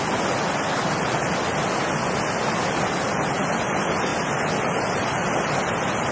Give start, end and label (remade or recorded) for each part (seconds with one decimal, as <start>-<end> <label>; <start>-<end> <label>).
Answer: 0.0-6.1 recorded